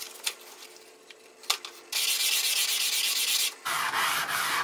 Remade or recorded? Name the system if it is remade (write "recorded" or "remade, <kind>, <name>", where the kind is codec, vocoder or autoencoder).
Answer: recorded